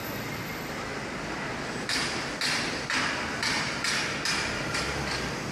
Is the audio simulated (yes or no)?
no